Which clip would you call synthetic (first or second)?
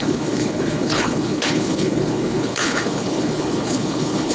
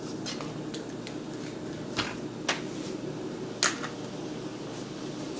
first